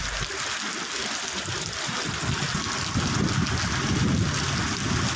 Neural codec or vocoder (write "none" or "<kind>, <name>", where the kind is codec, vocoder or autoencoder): none